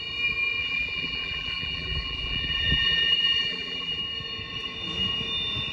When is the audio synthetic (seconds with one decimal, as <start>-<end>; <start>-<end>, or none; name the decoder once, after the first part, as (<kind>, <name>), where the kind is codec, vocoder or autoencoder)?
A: 0.6-4.0 (vocoder, BigVGAN v2)